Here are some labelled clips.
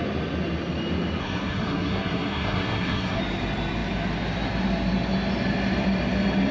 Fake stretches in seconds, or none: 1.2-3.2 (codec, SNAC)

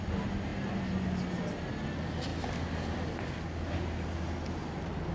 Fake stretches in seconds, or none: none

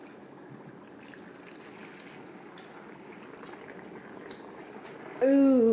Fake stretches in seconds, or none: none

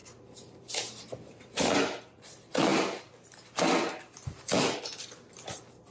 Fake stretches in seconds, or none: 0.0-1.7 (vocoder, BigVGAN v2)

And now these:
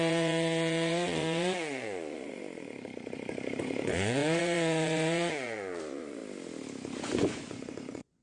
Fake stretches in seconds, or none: 0.0-6.2 (vocoder, Vocos); 7.0-8.2

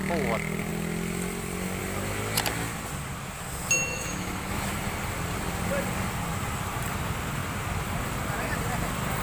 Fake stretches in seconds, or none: 3.9-4.8 (autoencoder, DAC-VAE)

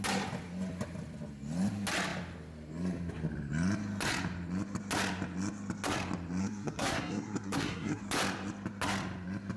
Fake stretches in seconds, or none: 6.4-8.0 (codec, SNAC)